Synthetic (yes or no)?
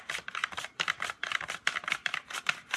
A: no